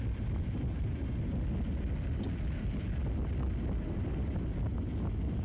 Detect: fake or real real